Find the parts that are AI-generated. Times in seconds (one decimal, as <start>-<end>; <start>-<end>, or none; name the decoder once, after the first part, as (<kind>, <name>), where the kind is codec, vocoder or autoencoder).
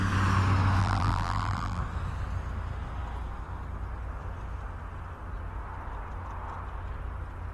0.8-1.8 (vocoder, BigVGAN v2)